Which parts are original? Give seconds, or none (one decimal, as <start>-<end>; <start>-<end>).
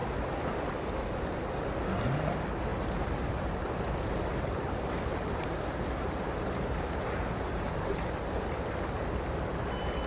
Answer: 0.0-2.7; 3.7-5.1; 8.4-10.1